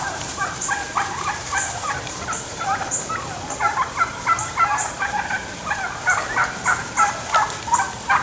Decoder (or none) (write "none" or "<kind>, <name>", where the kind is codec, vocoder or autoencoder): none